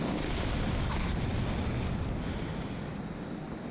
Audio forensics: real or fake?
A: real